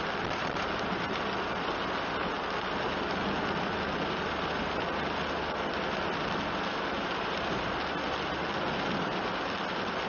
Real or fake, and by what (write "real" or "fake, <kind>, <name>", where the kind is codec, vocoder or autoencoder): real